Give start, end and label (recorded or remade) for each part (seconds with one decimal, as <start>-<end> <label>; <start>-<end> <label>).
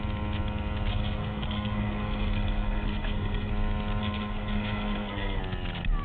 0.0-0.9 recorded; 0.9-3.5 remade; 3.5-4.0 recorded; 4.0-5.4 remade; 5.4-6.0 recorded